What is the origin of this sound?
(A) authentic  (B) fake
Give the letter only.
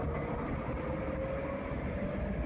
A